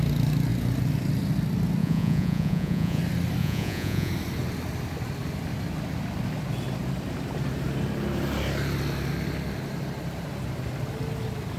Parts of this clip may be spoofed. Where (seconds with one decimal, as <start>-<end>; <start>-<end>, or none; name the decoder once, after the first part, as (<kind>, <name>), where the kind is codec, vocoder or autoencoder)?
1.8-3.0 (vocoder, Vocos); 3.4-4.1